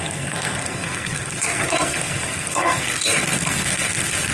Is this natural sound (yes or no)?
no